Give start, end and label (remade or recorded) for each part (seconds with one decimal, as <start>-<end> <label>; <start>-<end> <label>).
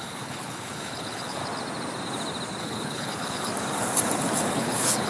0.0-1.4 remade; 1.4-2.6 recorded; 2.6-3.5 remade; 3.5-4.5 recorded; 4.5-5.1 remade